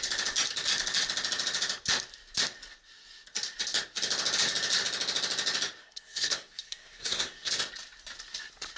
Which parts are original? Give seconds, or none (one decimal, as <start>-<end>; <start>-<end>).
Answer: 0.0-5.8; 7.5-8.8